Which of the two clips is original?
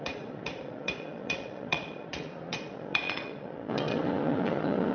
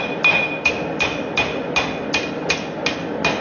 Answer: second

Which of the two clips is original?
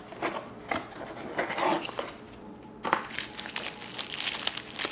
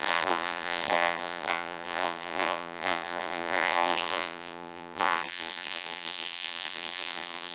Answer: first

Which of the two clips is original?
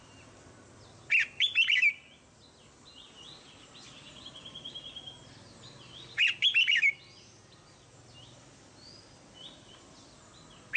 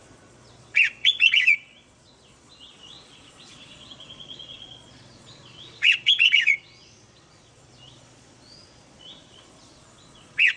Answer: first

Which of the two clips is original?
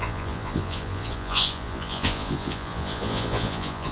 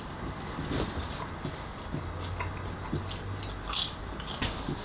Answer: second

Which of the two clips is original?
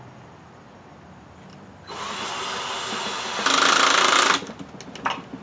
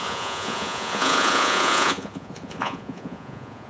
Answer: first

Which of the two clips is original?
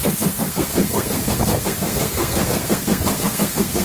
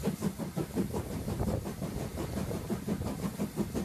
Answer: second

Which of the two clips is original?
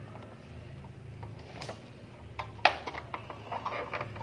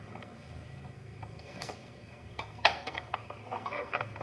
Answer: first